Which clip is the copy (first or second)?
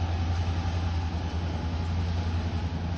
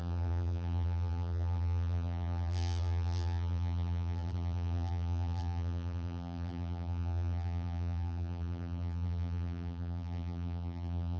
second